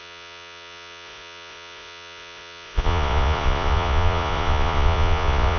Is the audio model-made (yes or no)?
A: yes